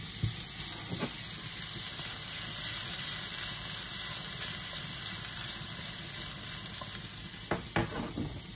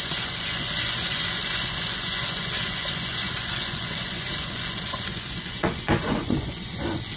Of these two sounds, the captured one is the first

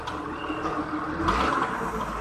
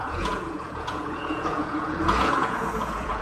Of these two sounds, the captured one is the first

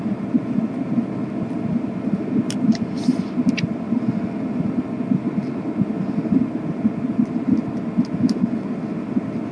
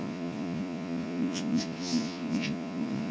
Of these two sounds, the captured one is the first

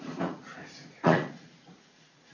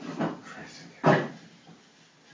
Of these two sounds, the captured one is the second